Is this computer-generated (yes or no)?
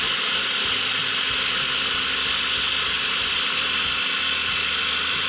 no